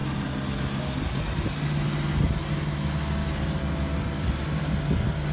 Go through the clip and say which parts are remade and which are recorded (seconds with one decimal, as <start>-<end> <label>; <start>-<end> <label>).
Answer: 0.0-5.3 recorded